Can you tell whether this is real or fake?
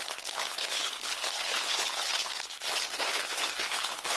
fake